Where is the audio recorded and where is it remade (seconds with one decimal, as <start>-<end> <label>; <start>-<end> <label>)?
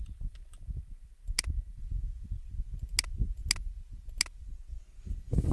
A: 0.0-5.5 recorded